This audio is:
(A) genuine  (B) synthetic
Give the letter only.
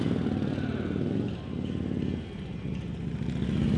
A